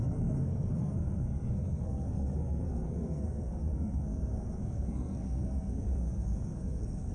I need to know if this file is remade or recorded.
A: remade